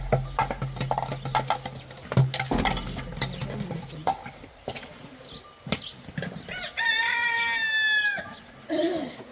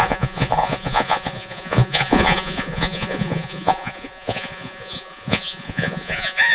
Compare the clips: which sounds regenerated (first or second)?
second